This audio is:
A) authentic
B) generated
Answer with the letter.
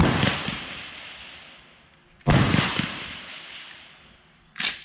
A